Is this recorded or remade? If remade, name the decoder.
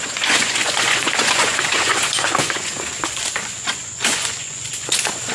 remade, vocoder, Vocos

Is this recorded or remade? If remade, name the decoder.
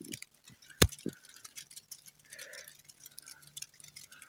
remade, vocoder, BigVGAN v2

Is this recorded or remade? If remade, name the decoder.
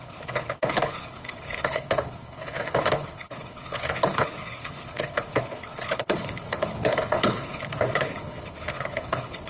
remade, codec, HILCodec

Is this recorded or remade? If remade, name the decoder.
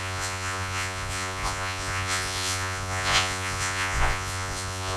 remade, vocoder, Vocos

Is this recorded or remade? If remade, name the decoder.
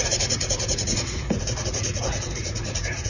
remade, vocoder, Vocos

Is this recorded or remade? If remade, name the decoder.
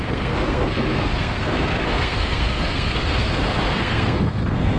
remade, codec, SNAC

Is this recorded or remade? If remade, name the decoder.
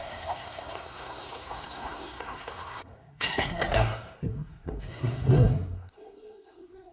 remade, codec, SNAC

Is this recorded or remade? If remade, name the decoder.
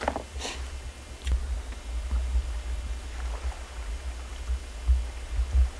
recorded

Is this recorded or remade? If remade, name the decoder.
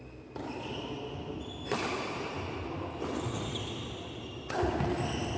recorded